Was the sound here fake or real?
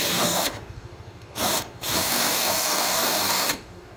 fake